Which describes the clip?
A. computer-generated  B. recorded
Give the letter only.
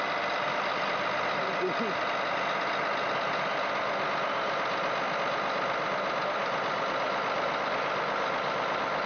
B